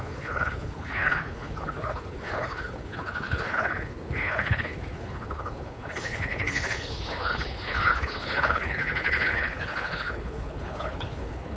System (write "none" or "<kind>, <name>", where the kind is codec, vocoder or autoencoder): codec, HILCodec